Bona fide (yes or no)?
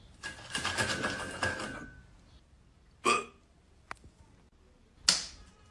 yes